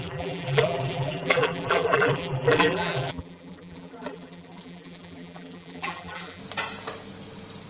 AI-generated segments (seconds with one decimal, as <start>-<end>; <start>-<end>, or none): 0.0-6.4